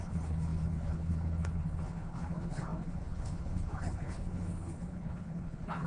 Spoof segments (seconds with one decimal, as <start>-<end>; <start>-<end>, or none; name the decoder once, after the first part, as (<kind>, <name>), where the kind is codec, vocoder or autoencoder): 0.0-5.9 (codec, HILCodec)